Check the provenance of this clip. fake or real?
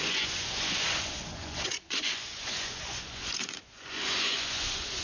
fake